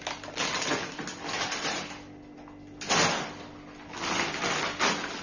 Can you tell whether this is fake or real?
real